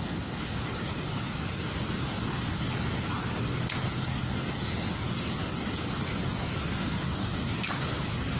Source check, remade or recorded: recorded